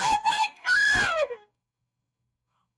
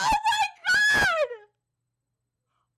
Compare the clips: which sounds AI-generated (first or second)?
first